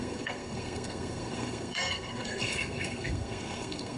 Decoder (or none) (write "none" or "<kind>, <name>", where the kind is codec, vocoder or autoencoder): codec, SNAC